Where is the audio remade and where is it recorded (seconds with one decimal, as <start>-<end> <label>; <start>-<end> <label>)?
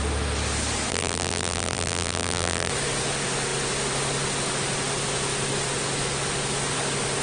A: 0.0-0.9 recorded; 0.9-2.7 remade; 2.7-7.2 recorded